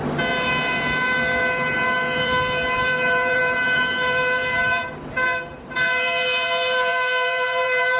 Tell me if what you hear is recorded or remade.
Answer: remade